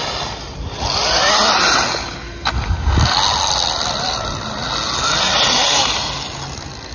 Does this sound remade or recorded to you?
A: recorded